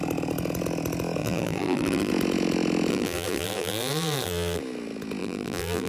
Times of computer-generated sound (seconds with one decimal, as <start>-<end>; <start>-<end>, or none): 1.2-2.1; 2.9-4.6; 5.2-5.9